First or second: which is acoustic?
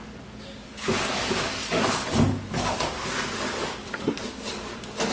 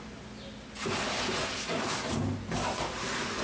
second